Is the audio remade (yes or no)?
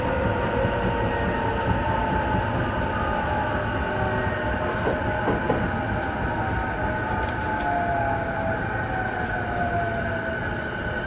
no